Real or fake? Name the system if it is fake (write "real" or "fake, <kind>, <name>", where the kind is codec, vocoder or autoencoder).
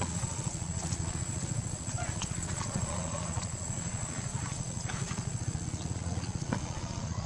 fake, vocoder, Vocos